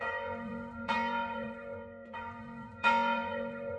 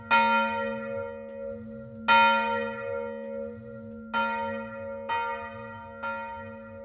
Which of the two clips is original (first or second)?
second